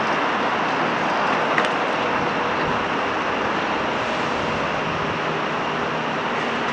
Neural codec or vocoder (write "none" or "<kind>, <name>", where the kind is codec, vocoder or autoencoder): none